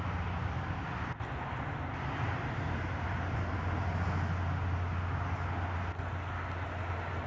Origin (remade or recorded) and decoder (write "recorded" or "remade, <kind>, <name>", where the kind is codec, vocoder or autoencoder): recorded